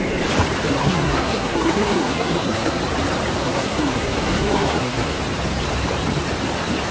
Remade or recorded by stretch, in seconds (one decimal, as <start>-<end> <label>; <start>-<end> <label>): 0.0-0.8 recorded; 0.8-2.8 remade; 2.8-3.4 recorded; 3.4-5.2 remade; 5.2-6.9 recorded